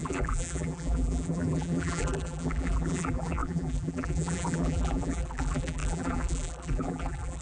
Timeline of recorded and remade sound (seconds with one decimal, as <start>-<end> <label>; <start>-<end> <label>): 0.0-7.4 remade